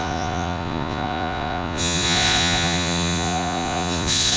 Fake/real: fake